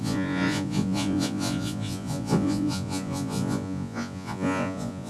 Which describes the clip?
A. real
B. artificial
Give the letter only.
B